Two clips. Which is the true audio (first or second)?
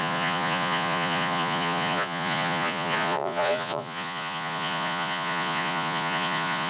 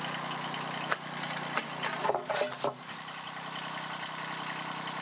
second